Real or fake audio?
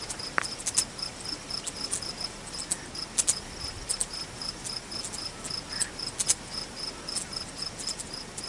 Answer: real